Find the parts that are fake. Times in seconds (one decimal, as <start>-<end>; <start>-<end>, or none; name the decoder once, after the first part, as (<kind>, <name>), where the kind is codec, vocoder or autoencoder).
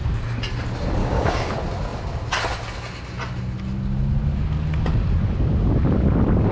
1.0-1.5 (codec, DAC)